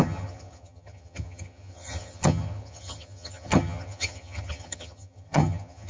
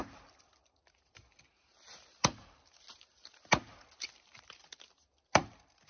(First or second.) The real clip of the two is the second